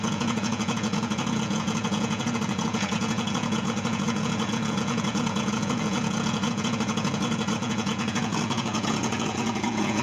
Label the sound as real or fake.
fake